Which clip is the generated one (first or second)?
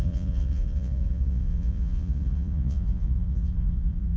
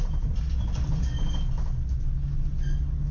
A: first